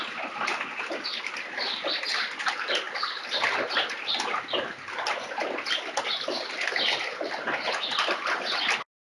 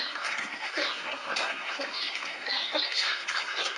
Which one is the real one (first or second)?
first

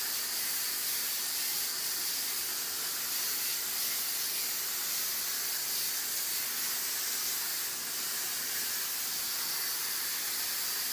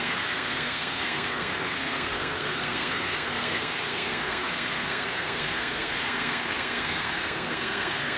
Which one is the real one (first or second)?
first